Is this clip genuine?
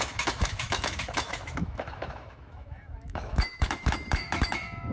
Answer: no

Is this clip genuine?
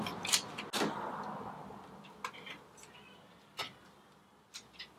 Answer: yes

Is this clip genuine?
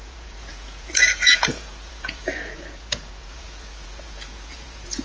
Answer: no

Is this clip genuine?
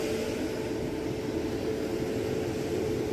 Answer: yes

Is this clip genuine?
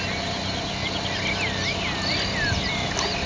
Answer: yes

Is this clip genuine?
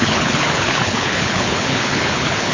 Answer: no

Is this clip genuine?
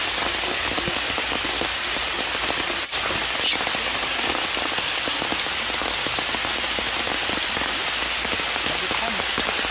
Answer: yes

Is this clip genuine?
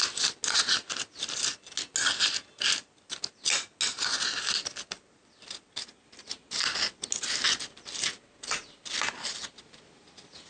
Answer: yes